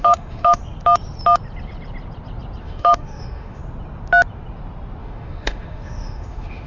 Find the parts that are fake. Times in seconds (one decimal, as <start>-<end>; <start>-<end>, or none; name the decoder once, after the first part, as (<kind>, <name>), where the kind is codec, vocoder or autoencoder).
0.0-0.6 (autoencoder, DAC-VAE); 2.6-3.6; 5.0-6.7

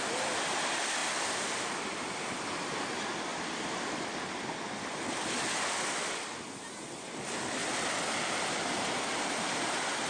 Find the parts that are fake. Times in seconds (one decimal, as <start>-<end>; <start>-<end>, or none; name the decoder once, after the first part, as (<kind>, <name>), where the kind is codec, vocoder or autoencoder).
none

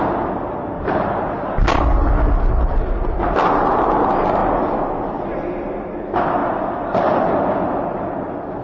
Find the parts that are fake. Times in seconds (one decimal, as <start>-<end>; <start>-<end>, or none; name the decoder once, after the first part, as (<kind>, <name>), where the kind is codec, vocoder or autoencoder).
none

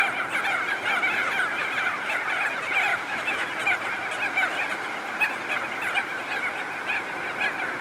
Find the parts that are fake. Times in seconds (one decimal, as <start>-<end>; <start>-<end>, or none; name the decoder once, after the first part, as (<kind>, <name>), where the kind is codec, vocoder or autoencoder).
2.9-3.5 (autoencoder, DAC-VAE)

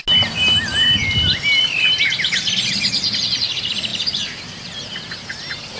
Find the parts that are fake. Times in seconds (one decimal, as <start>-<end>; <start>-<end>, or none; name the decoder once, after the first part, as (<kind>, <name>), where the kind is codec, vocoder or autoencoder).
none

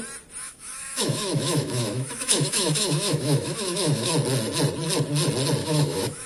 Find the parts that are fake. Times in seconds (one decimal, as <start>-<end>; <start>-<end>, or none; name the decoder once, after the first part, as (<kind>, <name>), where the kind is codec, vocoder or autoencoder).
0.4-4.1 (autoencoder, DAC-VAE); 5.6-6.3

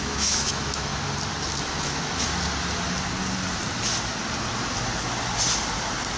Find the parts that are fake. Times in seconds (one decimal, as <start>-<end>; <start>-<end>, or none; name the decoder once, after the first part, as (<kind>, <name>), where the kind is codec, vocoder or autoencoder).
0.0-0.9 (autoencoder, DAC-VAE); 1.6-2.3